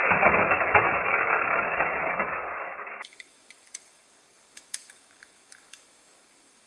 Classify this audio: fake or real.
fake